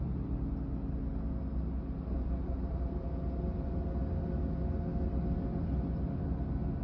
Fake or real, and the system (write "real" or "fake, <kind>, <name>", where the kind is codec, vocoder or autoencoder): real